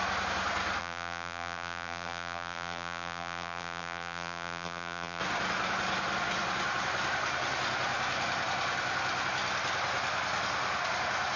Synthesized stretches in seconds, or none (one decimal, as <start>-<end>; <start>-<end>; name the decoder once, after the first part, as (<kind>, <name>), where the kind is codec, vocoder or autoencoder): 0.8-5.2 (vocoder, BigVGAN v2)